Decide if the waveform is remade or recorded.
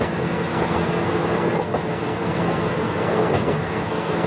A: remade